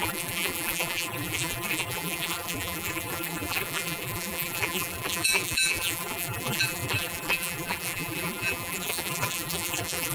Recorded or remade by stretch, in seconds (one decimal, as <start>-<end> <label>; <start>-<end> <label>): 0.0-10.1 remade